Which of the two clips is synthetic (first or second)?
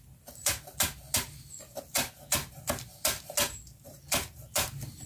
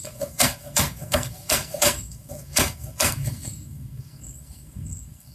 second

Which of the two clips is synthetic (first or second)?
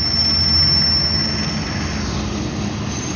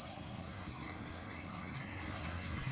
second